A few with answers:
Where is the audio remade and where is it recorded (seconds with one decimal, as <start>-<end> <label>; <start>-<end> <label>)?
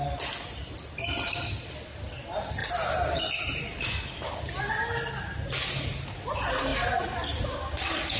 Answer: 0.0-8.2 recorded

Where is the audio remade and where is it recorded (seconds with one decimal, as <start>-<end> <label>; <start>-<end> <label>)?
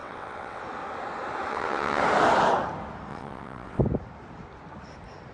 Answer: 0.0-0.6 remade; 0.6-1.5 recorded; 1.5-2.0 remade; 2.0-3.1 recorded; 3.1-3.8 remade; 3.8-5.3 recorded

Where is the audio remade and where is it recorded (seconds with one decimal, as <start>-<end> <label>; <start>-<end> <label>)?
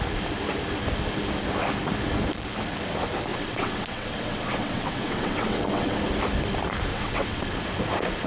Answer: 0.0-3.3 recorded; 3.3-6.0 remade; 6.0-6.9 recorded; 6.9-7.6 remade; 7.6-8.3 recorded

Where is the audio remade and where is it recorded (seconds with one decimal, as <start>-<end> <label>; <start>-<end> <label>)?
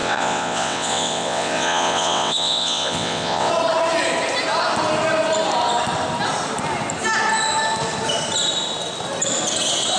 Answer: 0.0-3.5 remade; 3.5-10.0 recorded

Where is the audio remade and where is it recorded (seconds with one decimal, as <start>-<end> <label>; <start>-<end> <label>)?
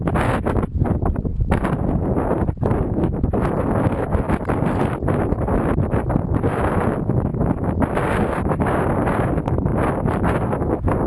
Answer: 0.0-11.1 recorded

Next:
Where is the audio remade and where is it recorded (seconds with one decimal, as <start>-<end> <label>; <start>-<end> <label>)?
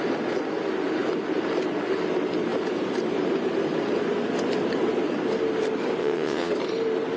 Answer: 0.0-6.0 recorded; 6.0-6.5 remade; 6.5-7.2 recorded